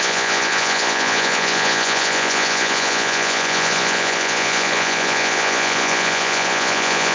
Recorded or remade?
remade